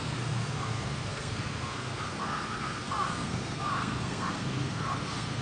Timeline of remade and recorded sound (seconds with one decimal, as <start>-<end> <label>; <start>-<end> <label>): 0.0-5.4 remade